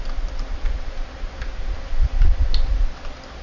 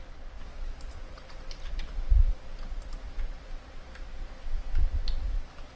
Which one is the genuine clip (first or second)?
second